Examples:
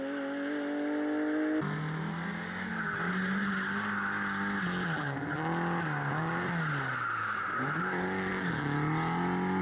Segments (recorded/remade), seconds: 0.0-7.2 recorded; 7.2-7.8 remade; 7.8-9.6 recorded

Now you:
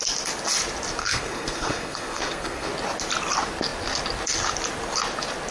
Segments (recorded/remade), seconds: 0.0-1.0 recorded; 1.0-2.7 remade; 2.7-5.5 recorded

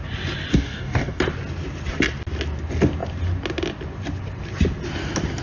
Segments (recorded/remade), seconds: 0.0-0.5 recorded; 0.5-1.2 remade; 1.2-5.4 recorded